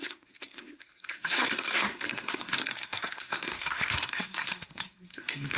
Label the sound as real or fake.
fake